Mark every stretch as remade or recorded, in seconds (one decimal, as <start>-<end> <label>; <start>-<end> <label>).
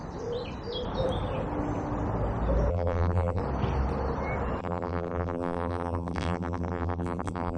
0.0-2.7 recorded; 2.7-3.4 remade; 3.4-4.6 recorded; 4.6-7.6 remade